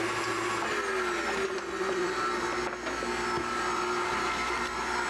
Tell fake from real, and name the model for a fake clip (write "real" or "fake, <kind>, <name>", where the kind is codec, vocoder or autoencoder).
real